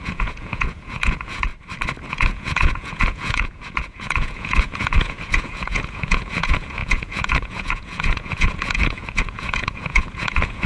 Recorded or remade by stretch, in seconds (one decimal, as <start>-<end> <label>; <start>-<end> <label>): 0.0-1.5 remade; 1.5-2.1 recorded; 2.1-10.7 remade

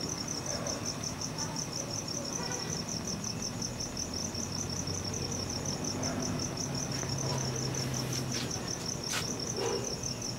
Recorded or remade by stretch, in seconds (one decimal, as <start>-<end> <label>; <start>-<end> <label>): 0.0-0.5 recorded; 0.5-3.1 remade; 3.1-4.2 recorded; 4.2-5.5 remade; 5.5-10.4 recorded

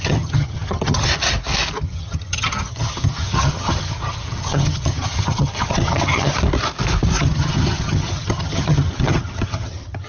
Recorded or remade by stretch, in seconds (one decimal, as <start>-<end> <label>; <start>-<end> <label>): 0.0-1.1 remade; 1.1-1.8 recorded; 1.8-6.3 remade; 6.3-7.2 recorded; 7.2-10.1 remade

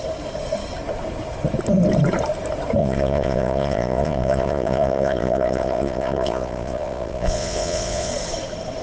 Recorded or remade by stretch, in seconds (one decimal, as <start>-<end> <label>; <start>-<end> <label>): 0.0-2.8 recorded; 2.8-8.1 remade; 8.1-8.8 recorded

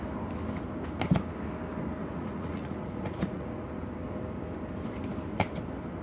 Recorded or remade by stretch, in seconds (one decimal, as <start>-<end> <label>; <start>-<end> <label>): 0.0-2.0 recorded; 2.0-3.7 remade; 3.7-6.0 recorded

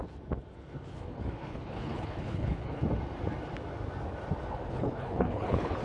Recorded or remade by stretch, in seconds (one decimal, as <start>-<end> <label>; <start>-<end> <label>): 0.0-0.9 recorded; 0.9-2.8 remade; 2.8-4.7 recorded; 4.7-5.8 remade

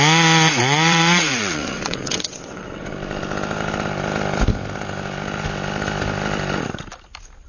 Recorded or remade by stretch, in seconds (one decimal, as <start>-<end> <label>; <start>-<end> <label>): 0.0-0.6 recorded; 0.6-2.9 remade; 2.9-7.5 recorded